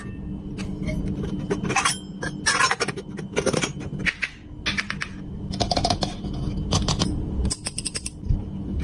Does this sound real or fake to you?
real